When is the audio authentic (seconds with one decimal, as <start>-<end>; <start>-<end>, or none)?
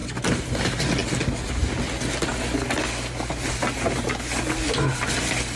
0.6-5.6